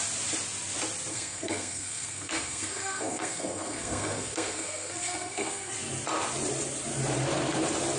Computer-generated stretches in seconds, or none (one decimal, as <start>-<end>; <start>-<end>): 1.1-5.7